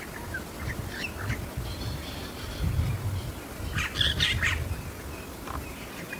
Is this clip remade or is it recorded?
recorded